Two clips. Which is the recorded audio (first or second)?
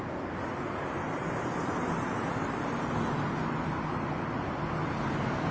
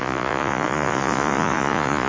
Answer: first